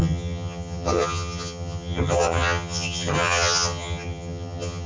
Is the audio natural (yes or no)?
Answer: no